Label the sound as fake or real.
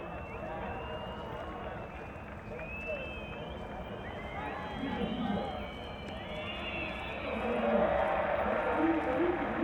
real